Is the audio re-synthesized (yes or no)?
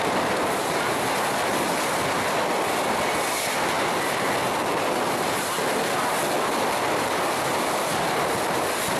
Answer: no